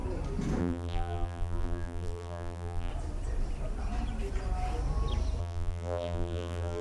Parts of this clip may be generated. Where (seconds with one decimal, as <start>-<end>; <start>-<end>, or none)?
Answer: 0.6-2.9; 5.4-6.8

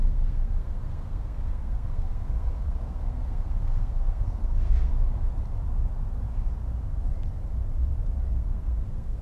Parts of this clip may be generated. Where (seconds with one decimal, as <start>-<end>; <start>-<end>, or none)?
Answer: 0.0-4.9; 8.3-9.2